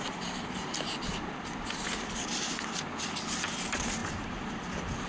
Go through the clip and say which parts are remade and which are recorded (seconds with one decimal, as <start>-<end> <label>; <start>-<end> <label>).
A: 0.0-5.1 recorded